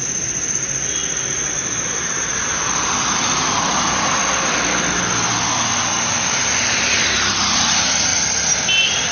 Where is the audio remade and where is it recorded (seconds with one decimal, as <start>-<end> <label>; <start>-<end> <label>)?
0.0-1.0 remade; 1.0-1.9 recorded; 1.9-4.2 remade; 4.2-6.0 recorded; 6.0-8.1 remade; 8.1-9.1 recorded